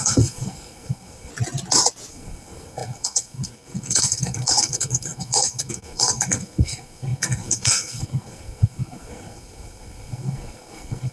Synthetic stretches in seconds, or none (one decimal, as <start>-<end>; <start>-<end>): 0.0-1.3; 2.1-11.1